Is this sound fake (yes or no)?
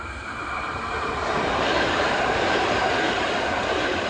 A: yes